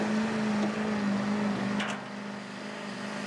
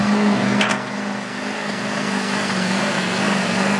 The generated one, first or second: second